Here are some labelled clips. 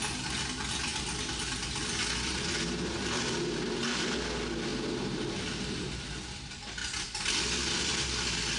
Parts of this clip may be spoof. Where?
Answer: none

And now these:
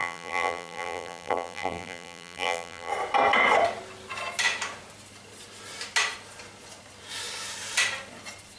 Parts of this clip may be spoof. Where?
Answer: 0.0-2.9 (vocoder, BigVGAN v2)

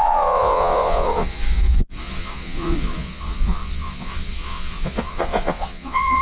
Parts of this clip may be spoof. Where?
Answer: 0.0-6.2 (vocoder, Vocos)